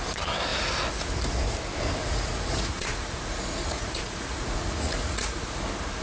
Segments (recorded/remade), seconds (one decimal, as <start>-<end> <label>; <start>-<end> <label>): 0.0-2.0 recorded; 2.0-5.6 remade; 5.6-6.0 recorded